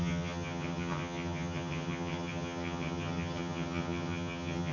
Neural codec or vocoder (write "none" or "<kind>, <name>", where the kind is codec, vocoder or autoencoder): vocoder, HiFi-GAN